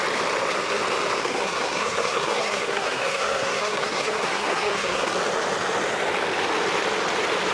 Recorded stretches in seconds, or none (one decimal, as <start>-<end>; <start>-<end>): 0.0-1.2; 5.1-7.5